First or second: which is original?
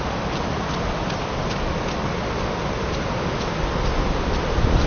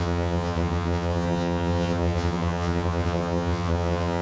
first